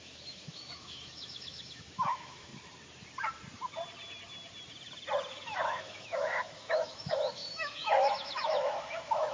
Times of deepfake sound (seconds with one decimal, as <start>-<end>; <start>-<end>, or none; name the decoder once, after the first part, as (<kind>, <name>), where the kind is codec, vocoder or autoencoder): 0.0-2.5 (autoencoder, DAC-VAE); 5.3-9.3